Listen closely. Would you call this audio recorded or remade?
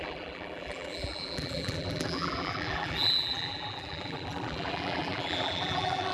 remade